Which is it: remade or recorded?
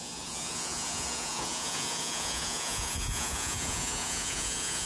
remade